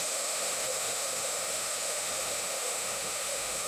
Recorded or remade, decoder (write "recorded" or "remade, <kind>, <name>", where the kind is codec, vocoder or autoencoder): remade, autoencoder, DAC-VAE